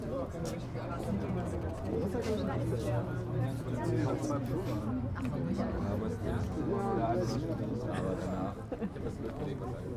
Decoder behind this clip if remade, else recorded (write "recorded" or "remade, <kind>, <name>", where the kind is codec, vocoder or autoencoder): recorded